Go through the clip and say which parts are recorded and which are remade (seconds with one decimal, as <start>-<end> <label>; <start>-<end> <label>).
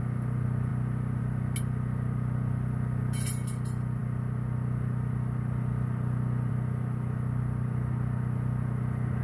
0.0-9.2 recorded